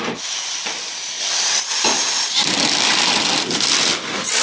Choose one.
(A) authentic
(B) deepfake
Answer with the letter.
A